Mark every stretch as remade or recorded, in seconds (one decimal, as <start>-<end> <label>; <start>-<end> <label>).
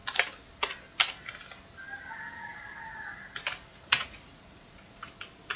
0.0-3.7 recorded; 3.7-5.1 remade; 5.1-5.6 recorded